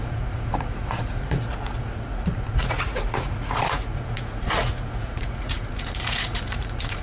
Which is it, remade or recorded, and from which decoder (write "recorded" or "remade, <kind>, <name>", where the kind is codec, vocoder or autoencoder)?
remade, vocoder, Vocos